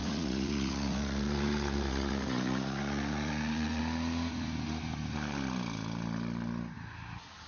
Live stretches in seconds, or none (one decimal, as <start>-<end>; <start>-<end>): 3.8-7.5